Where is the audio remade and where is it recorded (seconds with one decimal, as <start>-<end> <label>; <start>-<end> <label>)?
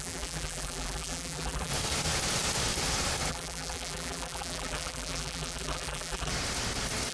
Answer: 0.0-1.7 remade; 1.7-3.3 recorded; 3.3-6.3 remade; 6.3-7.1 recorded